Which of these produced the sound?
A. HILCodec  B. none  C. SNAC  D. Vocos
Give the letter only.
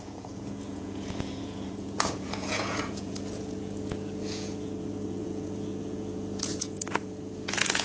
D